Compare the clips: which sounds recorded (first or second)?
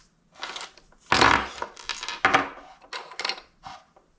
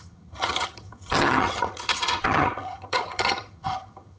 first